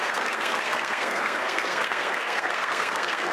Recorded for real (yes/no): no